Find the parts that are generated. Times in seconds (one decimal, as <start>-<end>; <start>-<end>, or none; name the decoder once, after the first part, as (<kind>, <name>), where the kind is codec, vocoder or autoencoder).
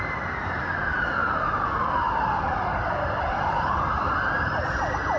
none